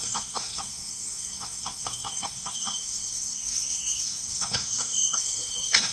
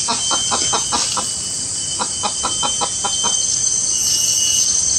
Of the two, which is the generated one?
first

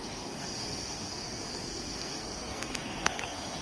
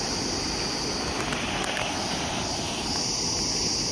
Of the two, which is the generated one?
first